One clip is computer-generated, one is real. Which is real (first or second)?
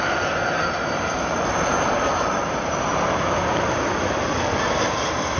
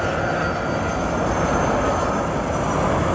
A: second